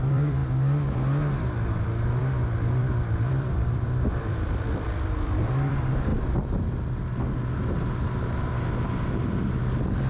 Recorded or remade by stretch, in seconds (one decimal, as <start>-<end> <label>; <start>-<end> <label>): 0.0-0.4 remade; 0.4-1.7 recorded; 1.7-2.2 remade; 2.2-2.8 recorded; 2.8-6.1 remade; 6.1-9.6 recorded; 9.6-10.1 remade